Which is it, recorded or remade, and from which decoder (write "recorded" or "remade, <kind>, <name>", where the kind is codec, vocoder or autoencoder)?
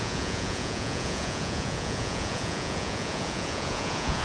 remade, vocoder, Vocos